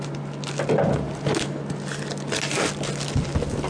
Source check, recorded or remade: recorded